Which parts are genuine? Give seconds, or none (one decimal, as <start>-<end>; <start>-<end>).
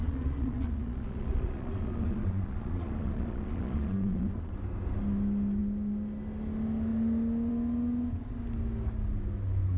4.5-9.8